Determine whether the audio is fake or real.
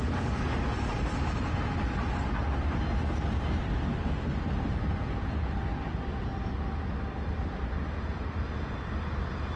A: real